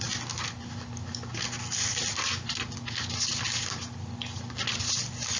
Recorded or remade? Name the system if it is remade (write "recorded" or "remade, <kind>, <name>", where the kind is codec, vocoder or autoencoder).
recorded